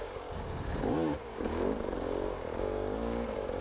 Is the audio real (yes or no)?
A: no